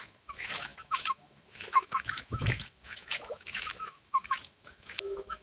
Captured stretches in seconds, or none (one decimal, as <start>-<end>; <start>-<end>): none